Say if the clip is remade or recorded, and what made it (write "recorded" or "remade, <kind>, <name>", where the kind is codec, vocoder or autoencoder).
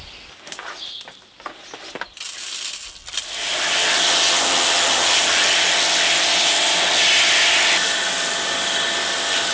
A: recorded